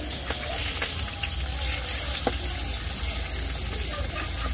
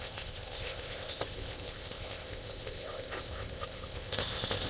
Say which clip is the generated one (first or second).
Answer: second